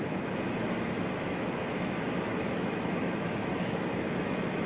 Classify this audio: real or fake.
fake